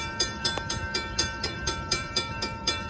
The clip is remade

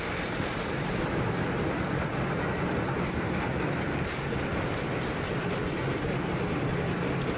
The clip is remade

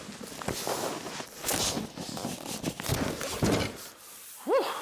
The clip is recorded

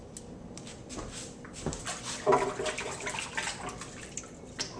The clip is recorded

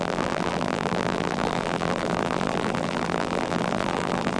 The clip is remade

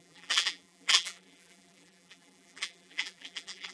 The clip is remade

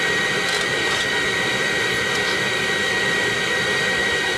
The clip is remade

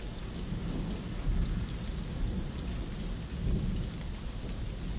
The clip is recorded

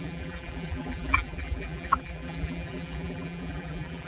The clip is remade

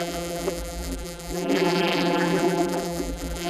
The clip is remade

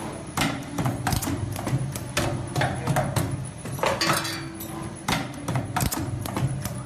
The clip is recorded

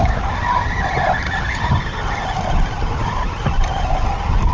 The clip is recorded